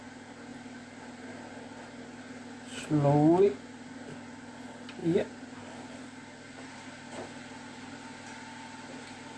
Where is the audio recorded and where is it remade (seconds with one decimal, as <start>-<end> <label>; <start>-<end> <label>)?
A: 0.0-9.4 recorded